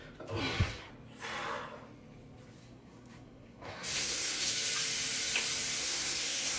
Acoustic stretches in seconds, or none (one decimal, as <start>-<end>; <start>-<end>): 0.0-0.4; 0.9-2.6; 4.5-5.8